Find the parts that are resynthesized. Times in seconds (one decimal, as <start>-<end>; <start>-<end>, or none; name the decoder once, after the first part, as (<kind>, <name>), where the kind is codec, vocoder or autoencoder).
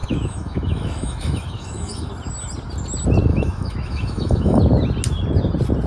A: 0.0-2.1 (autoencoder, DAC-VAE); 3.3-4.6